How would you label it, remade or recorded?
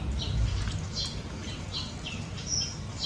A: recorded